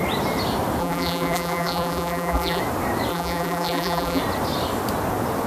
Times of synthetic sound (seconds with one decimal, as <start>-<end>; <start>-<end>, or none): 0.8-2.6; 3.1-4.2